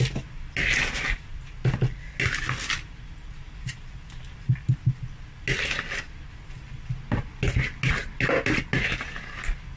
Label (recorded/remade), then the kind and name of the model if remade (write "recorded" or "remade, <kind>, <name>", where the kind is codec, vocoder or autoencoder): recorded